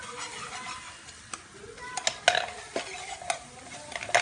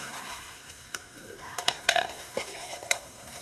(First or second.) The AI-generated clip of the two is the second